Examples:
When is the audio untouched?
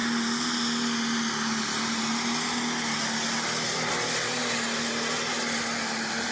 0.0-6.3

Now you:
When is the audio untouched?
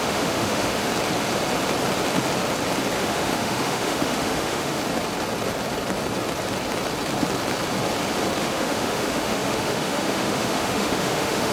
0.9-3.0; 4.8-8.4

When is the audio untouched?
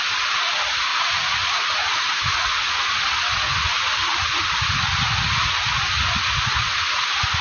0.0-0.9; 3.0-7.4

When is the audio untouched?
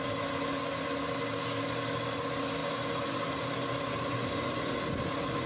0.0-5.5